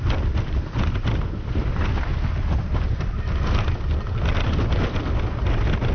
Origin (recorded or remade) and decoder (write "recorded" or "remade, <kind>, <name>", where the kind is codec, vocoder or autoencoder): recorded